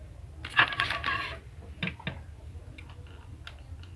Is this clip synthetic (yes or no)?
no